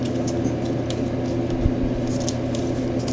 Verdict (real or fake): real